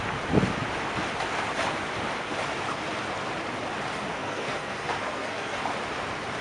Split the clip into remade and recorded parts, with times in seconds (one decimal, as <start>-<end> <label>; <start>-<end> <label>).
0.0-4.1 recorded; 4.1-5.6 remade; 5.6-6.4 recorded